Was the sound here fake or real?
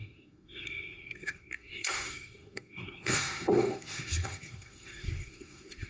fake